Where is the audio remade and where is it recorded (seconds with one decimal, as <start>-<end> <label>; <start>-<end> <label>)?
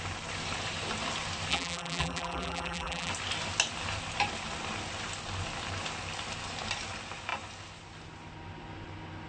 0.0-1.5 recorded; 1.5-3.1 remade; 3.1-9.3 recorded